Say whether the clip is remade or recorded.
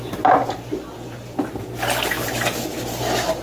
recorded